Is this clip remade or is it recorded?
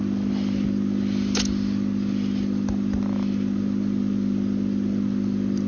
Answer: recorded